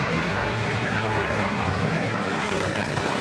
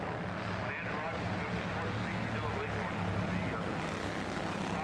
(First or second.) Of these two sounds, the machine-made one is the first